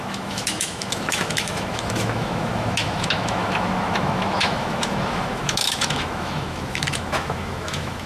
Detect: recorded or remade remade